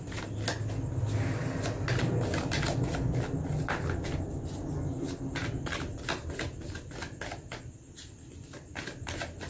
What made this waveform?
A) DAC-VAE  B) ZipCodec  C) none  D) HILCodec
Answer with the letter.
C